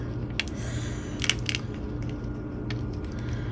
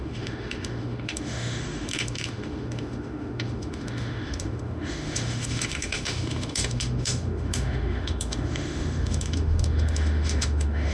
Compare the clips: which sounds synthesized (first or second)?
second